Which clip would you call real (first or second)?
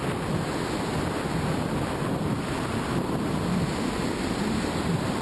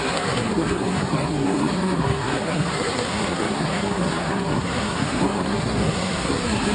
first